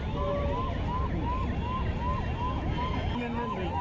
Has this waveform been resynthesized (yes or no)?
no